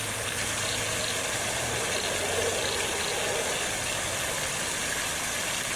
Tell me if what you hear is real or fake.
real